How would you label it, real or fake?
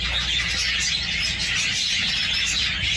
real